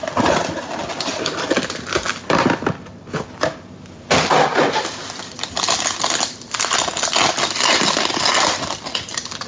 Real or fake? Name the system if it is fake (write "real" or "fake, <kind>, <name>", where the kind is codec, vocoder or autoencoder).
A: real